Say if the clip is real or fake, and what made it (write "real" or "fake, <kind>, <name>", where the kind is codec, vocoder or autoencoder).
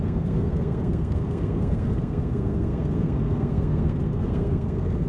fake, codec, SNAC